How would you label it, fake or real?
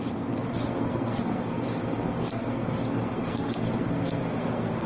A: fake